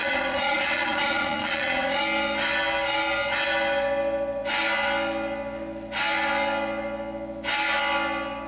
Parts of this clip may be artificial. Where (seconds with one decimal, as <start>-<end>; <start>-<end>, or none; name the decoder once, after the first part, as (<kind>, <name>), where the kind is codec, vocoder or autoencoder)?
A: 0.0-2.0 (vocoder, Vocos)